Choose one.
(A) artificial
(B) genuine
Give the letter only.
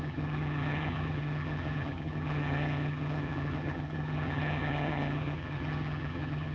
A